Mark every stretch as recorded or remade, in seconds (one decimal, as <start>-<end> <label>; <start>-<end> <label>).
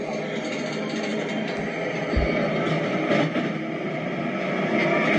0.0-5.2 recorded